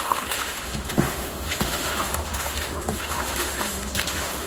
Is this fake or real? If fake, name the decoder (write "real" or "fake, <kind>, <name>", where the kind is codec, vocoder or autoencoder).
fake, autoencoder, DAC-VAE